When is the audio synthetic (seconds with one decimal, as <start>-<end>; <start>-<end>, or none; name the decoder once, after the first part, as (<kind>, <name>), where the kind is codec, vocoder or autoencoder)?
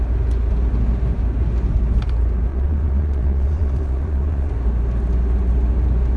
2.5-4.5 (vocoder, Vocos)